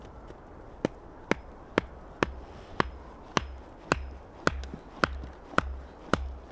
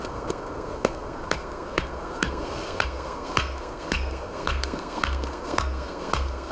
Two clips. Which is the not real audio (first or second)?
second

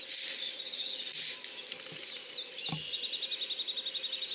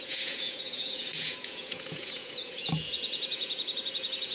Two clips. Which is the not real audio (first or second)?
second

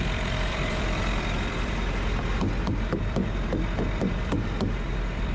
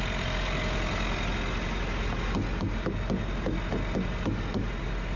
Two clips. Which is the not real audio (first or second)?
first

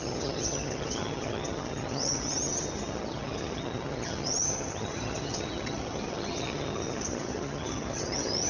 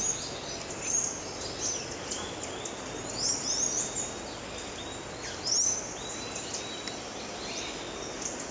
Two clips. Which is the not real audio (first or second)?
first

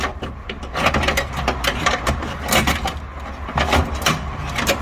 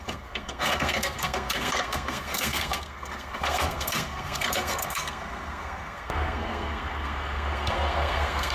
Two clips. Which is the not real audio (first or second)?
second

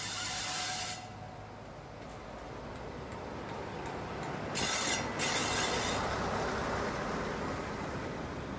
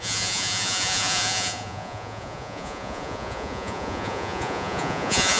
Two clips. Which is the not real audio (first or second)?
second